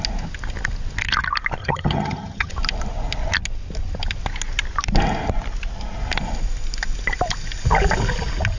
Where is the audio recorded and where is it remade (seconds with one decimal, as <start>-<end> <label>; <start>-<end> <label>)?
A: 0.0-1.6 recorded; 1.6-2.5 remade; 2.5-8.6 recorded